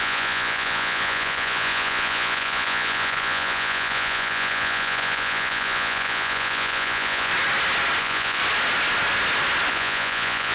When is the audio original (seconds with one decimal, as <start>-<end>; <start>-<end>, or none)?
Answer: 7.3-8.0; 8.4-9.7

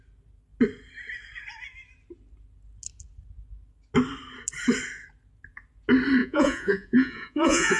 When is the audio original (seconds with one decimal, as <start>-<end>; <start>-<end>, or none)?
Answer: 0.0-6.2

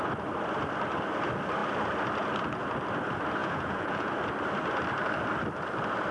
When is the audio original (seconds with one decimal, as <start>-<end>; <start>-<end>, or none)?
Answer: 0.0-3.4; 4.1-6.1